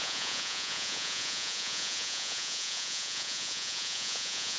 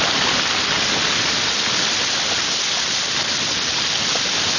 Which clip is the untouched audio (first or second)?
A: second